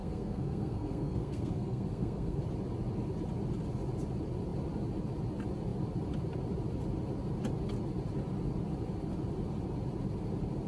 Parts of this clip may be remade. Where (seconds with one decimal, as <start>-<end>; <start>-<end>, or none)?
0.0-2.4